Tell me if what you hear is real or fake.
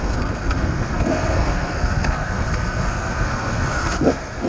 fake